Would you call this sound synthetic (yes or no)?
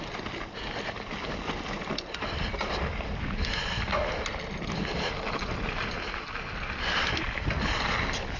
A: no